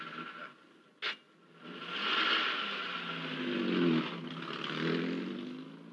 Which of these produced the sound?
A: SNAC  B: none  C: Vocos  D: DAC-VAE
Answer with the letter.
B